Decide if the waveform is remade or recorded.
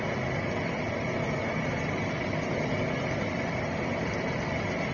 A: recorded